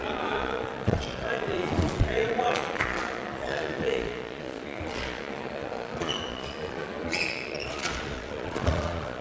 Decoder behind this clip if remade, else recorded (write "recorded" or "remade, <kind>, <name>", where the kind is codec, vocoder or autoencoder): remade, vocoder, Vocos